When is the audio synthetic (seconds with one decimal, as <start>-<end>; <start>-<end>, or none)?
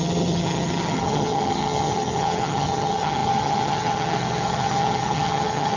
0.0-5.8